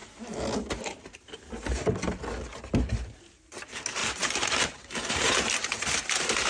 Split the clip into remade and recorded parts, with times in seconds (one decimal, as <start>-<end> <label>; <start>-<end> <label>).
0.0-4.0 recorded; 4.0-5.5 remade; 5.5-6.5 recorded